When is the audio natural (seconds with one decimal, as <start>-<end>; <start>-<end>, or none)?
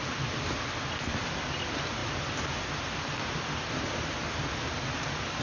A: 0.0-5.4